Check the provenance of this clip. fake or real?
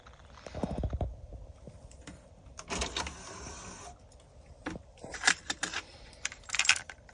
fake